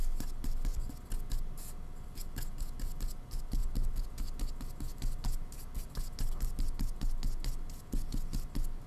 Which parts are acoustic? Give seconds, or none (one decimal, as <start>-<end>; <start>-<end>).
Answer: 0.0-8.9